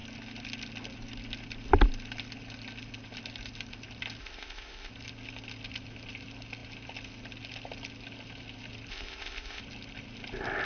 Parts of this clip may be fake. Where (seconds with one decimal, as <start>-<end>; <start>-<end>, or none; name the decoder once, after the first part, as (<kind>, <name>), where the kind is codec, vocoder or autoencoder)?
4.2-4.9 (codec, ZipCodec); 8.9-9.6